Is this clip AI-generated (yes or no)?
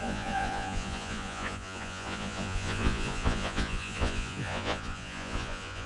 yes